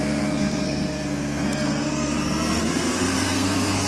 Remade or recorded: remade